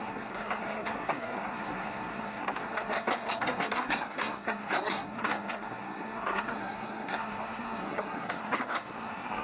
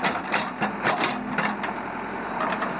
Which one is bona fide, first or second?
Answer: second